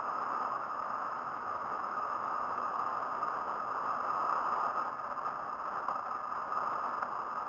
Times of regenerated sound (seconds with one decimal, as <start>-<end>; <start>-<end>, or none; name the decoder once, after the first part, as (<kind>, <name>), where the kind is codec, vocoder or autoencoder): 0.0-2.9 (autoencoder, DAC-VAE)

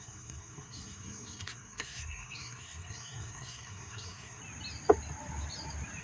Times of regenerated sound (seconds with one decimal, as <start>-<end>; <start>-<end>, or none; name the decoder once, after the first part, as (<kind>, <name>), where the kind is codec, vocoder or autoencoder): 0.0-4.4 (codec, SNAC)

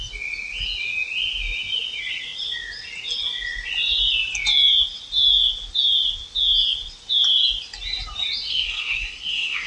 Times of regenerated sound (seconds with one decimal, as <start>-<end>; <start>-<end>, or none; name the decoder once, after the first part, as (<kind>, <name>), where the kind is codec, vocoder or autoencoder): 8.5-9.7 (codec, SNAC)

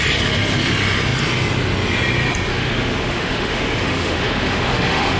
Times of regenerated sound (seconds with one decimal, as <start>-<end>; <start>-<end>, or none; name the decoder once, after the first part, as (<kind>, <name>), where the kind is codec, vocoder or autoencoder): 2.5-5.2 (autoencoder, DAC-VAE)